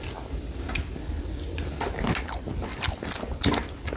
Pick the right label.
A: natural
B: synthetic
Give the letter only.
A